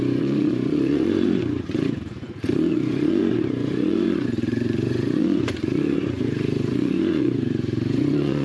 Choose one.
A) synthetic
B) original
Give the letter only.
A